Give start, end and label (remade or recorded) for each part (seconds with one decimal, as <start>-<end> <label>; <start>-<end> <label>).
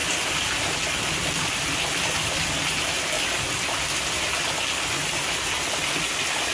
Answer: 0.0-6.5 recorded